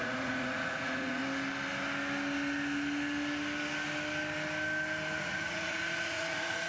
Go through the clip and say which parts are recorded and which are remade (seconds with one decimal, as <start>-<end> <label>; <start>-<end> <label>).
0.0-1.2 remade; 1.2-5.2 recorded; 5.2-6.7 remade